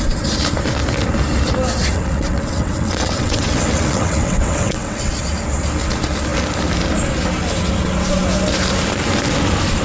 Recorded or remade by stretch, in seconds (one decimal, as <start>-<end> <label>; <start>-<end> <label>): 0.0-1.9 recorded; 1.9-5.1 remade; 5.1-9.8 recorded